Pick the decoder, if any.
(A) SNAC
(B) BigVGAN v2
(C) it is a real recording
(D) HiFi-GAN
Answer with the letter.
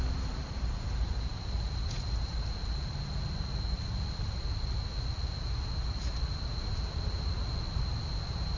C